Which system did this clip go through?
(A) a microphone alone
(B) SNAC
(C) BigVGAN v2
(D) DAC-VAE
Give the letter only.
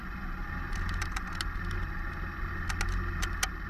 A